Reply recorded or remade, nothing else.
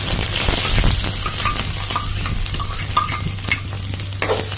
recorded